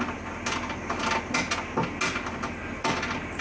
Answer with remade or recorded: recorded